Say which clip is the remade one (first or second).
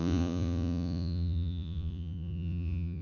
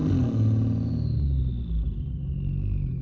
first